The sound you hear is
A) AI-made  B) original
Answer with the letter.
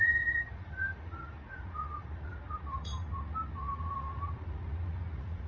A